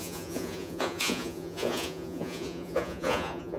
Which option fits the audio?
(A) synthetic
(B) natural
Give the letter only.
A